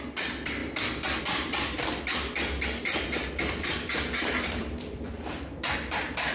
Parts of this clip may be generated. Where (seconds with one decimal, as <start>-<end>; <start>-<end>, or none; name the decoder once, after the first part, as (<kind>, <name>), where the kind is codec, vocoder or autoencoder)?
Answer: 2.1-6.3 (vocoder, BigVGAN v2)